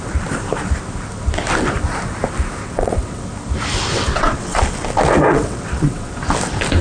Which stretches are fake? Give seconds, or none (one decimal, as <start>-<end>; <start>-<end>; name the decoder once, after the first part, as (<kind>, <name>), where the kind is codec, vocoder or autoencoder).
2.6-3.2 (vocoder, WaveNeXt); 3.9-4.6; 5.3-6.1